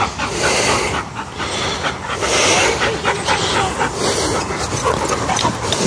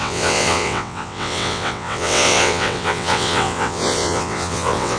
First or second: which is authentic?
first